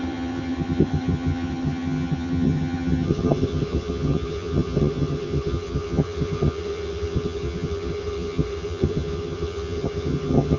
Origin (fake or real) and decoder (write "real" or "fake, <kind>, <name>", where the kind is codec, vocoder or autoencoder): fake, vocoder, HiFi-GAN